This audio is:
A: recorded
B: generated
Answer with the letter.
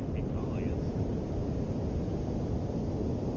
A